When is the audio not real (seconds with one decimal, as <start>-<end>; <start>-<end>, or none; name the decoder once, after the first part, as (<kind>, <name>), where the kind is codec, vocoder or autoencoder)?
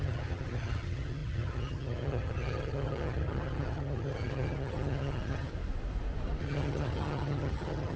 0.0-5.5 (vocoder, HiFi-GAN); 6.4-8.0